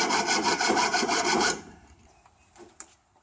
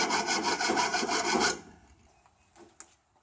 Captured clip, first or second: second